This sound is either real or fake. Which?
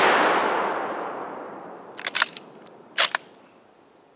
real